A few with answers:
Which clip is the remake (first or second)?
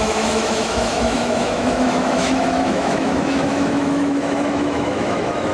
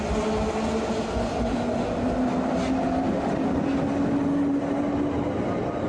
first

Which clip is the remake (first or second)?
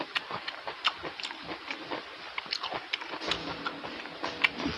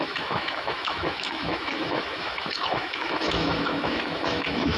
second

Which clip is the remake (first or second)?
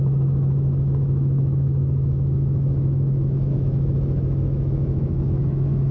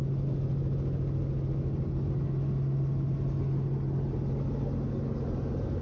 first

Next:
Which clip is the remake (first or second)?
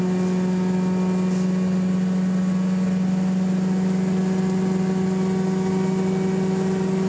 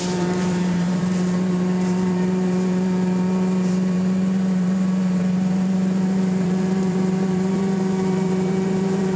second